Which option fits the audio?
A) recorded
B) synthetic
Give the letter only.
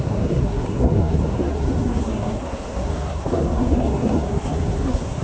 B